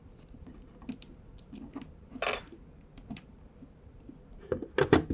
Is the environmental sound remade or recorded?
recorded